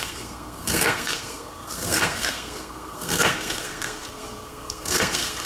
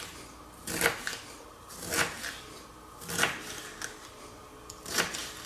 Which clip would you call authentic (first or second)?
second